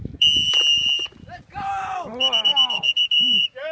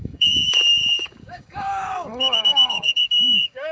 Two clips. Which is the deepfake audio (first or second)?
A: second